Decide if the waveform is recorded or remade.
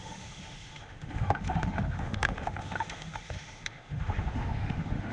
remade